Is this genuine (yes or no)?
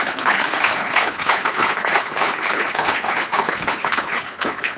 no